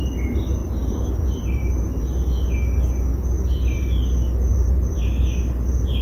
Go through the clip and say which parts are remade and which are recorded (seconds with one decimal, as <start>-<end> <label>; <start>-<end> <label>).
0.0-0.6 recorded; 0.6-2.0 remade; 2.0-4.5 recorded; 4.5-5.2 remade; 5.2-6.0 recorded